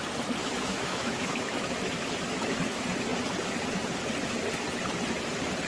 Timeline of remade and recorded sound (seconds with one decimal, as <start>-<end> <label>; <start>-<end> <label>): 0.0-0.4 recorded; 0.4-1.9 remade; 1.9-5.7 recorded